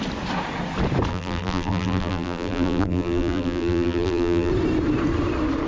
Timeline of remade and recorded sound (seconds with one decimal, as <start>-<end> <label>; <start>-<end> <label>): 0.0-1.1 recorded; 1.1-4.5 remade; 4.5-5.7 recorded